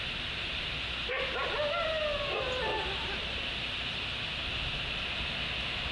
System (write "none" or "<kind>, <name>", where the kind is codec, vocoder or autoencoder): none